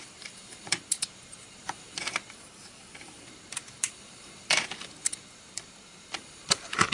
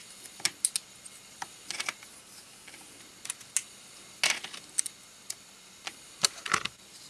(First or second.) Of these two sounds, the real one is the second